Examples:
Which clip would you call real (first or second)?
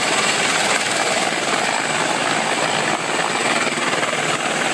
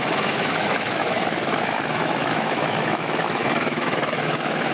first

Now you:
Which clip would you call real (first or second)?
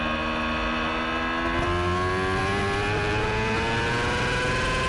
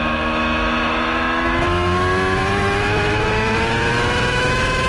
first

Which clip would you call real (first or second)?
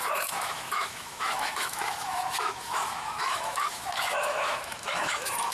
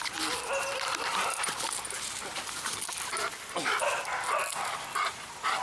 second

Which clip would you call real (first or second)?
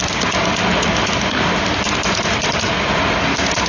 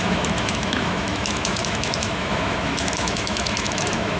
first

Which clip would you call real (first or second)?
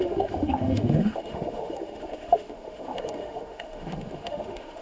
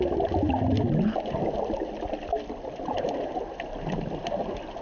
second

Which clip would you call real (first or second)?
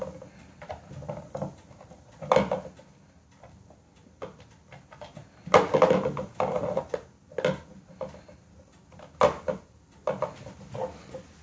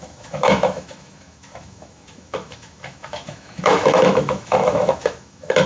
first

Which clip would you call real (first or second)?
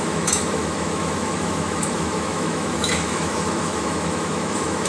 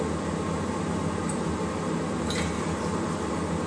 second